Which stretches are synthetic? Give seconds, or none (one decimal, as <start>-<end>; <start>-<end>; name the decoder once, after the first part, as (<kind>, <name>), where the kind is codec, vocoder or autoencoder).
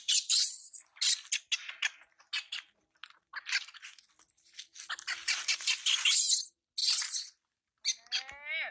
none